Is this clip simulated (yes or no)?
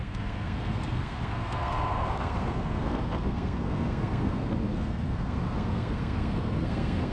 yes